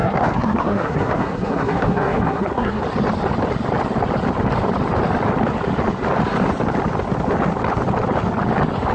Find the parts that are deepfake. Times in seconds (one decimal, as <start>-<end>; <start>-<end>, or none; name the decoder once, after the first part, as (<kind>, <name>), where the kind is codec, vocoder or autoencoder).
0.0-2.8 (codec, SNAC)